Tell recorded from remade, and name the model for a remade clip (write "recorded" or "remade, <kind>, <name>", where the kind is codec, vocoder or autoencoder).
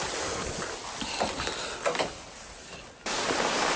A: recorded